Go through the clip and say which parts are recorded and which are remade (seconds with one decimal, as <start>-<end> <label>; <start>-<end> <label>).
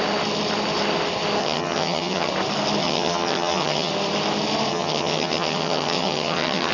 0.0-1.4 recorded; 1.4-2.3 remade; 2.3-2.8 recorded; 2.8-3.9 remade; 3.9-4.7 recorded; 4.7-6.7 remade